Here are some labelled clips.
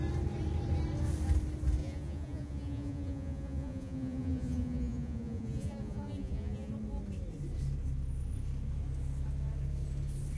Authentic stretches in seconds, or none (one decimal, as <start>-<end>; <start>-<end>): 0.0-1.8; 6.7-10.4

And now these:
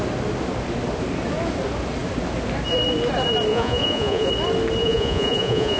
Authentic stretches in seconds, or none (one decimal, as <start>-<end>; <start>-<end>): 0.0-3.5; 4.3-4.8

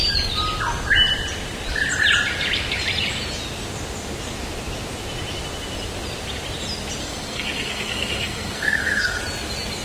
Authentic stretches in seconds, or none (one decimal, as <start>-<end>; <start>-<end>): 0.0-7.0; 9.2-9.8

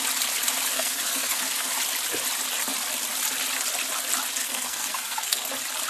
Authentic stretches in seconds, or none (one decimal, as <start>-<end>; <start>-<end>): 0.0-0.7; 1.7-4.4; 5.5-5.9

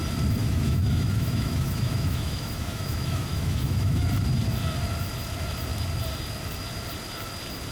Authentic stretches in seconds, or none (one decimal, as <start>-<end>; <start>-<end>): 0.0-0.4; 4.0-7.7